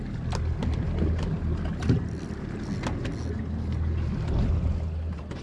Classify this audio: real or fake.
real